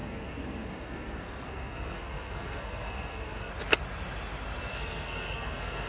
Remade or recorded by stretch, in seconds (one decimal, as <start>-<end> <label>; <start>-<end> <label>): 0.0-3.5 remade; 3.5-4.7 recorded; 4.7-5.9 remade